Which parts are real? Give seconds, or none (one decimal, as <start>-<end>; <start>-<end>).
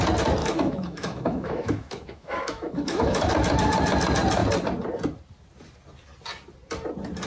0.0-0.4; 3.3-7.3